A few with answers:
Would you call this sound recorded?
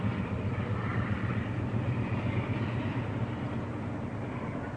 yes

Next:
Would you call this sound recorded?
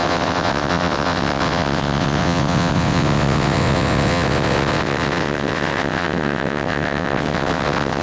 no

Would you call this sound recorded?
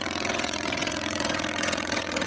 no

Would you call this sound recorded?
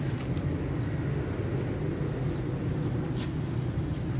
yes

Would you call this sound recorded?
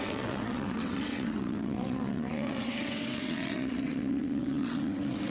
no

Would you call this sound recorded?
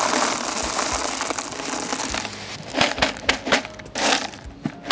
yes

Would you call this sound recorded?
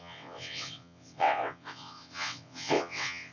no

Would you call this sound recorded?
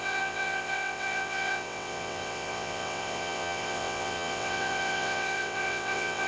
no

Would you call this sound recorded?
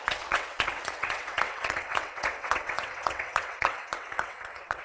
no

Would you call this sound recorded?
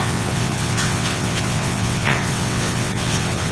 no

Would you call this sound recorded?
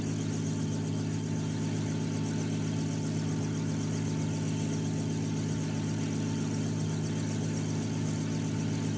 yes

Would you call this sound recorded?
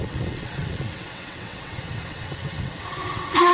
no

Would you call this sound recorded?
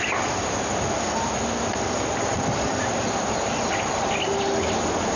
yes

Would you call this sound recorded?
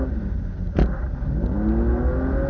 yes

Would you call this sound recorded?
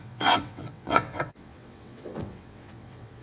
no